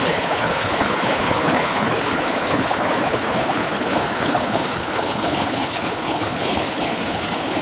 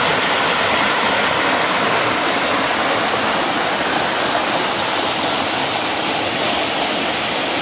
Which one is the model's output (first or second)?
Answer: first